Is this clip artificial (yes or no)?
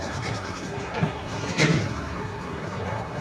yes